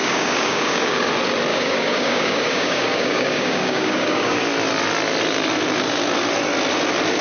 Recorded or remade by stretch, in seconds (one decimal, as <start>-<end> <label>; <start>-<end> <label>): 0.0-1.1 remade; 1.1-1.5 recorded; 1.5-4.4 remade; 4.4-7.2 recorded